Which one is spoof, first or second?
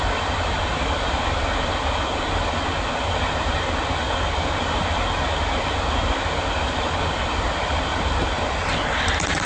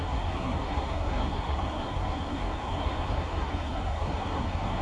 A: second